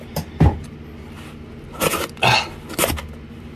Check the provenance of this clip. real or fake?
real